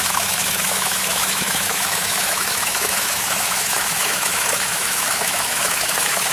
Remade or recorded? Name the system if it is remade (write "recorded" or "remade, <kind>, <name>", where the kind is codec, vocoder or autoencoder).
remade, autoencoder, DAC-VAE